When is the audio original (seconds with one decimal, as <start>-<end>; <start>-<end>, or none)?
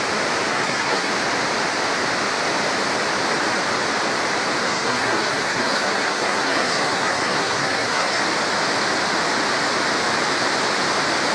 0.0-0.5; 1.1-4.6; 8.2-11.3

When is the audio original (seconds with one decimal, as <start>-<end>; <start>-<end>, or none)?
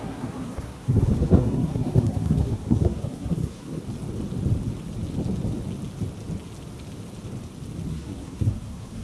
3.8-7.9